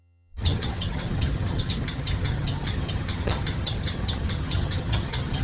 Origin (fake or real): fake